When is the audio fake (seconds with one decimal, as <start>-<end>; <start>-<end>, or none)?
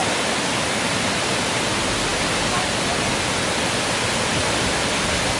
none